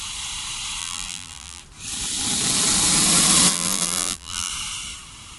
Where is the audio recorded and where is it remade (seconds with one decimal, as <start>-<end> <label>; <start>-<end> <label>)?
0.0-0.8 recorded; 0.8-1.6 remade; 1.6-3.5 recorded; 3.5-4.5 remade; 4.5-5.4 recorded